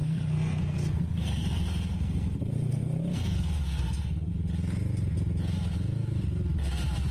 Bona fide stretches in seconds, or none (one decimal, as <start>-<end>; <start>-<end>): 4.3-7.1